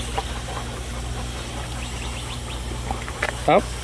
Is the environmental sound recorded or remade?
recorded